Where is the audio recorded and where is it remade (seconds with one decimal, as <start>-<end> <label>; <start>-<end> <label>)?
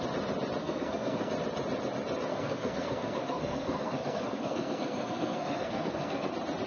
0.0-0.6 recorded; 0.6-1.3 remade; 1.3-2.3 recorded; 2.3-6.3 remade; 6.3-6.7 recorded